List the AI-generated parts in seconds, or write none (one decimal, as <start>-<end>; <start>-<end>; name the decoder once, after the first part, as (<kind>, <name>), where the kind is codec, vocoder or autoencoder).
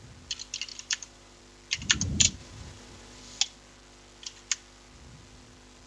0.7-1.4 (vocoder, BigVGAN v2); 2.4-3.4